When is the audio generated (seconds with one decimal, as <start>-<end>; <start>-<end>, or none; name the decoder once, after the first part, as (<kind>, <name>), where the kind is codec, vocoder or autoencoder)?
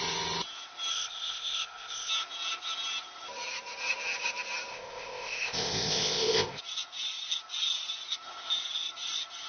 0.9-2.1 (codec, ZipCodec); 4.7-6.6